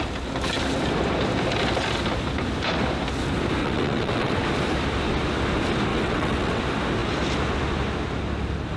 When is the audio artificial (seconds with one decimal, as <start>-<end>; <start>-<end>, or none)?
3.6-4.4; 5.9-6.6